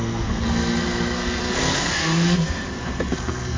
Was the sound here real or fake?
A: fake